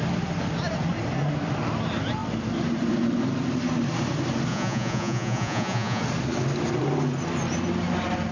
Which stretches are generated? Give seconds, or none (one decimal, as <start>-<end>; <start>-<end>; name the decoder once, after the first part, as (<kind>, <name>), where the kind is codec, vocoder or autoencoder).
4.5-6.0 (vocoder, Vocos)